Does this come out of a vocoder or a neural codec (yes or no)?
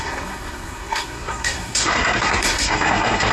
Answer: yes